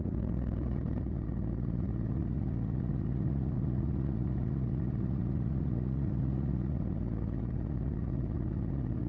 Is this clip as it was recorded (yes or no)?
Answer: no